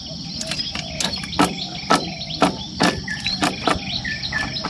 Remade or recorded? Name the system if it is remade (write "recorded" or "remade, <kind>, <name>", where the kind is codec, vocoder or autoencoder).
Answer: recorded